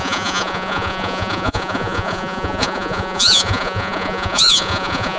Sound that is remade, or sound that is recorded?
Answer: remade